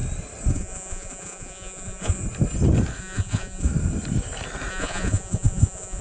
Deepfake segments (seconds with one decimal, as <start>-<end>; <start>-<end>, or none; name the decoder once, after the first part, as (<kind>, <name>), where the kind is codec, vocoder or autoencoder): 0.5-2.2 (vocoder, Vocos); 3.0-3.7; 4.7-6.0